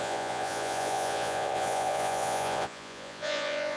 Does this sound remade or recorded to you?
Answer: remade